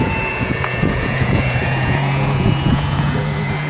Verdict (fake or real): fake